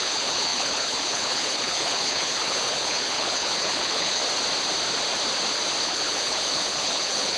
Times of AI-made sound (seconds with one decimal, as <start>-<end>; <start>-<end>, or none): 0.0-4.2; 5.8-7.4